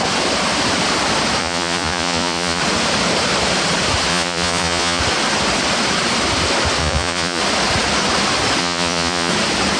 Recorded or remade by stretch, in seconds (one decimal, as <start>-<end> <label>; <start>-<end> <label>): 0.0-1.4 recorded; 1.4-2.6 remade; 2.6-4.1 recorded; 4.1-5.0 remade; 5.0-6.8 recorded; 6.8-7.4 remade; 7.4-8.6 recorded; 8.6-9.3 remade; 9.3-9.8 recorded